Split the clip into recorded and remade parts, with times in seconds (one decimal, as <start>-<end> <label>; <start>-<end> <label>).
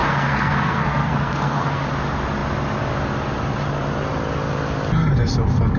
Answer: 0.0-1.8 remade; 1.8-5.8 recorded